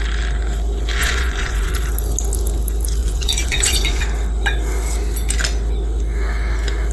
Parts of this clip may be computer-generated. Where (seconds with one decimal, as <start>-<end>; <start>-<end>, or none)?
1.0-1.7; 3.0-4.0